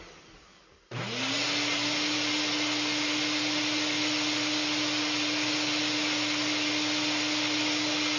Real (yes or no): yes